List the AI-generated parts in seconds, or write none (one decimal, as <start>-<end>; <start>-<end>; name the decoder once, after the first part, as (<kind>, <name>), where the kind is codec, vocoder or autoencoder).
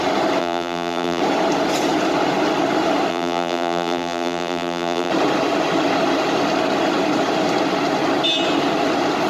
0.4-1.2 (vocoder, BigVGAN v2); 3.1-5.1